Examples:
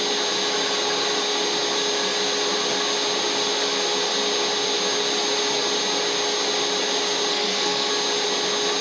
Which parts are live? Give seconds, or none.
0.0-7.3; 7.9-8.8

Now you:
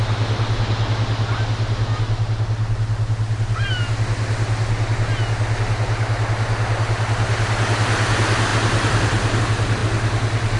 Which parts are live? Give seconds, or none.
0.0-10.6

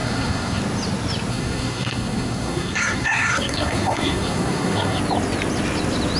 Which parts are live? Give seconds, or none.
0.6-1.3; 5.0-6.2

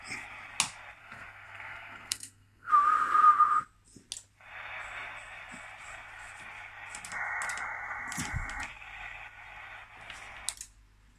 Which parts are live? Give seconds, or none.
0.0-1.0; 2.7-11.2

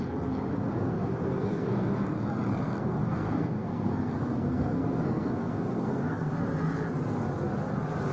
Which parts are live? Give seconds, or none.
0.0-0.8; 1.9-2.5; 6.3-8.1